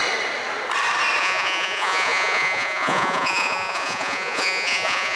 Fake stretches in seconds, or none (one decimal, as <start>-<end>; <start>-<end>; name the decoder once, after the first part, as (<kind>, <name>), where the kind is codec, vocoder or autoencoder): 1.2-5.2 (vocoder, Vocos)